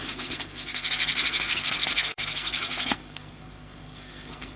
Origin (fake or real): fake